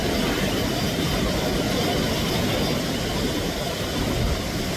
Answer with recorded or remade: recorded